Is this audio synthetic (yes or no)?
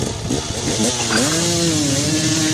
no